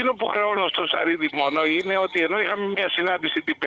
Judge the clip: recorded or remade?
remade